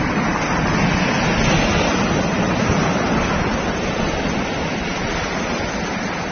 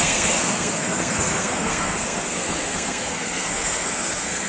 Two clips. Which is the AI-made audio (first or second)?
second